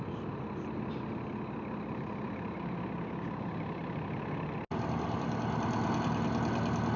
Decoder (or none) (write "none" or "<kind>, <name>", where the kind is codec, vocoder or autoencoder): none